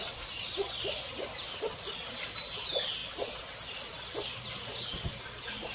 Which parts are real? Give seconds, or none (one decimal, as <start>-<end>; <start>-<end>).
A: 0.0-5.7